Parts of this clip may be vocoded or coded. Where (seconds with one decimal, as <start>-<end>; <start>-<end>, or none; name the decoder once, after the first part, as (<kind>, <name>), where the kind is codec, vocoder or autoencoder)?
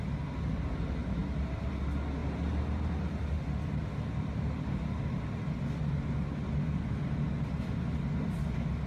none